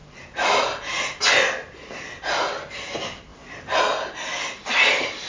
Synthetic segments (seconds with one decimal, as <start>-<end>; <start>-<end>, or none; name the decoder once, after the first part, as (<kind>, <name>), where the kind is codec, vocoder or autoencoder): none